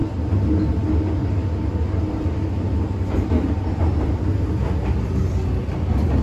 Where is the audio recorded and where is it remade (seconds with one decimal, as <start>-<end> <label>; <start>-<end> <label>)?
0.0-6.2 recorded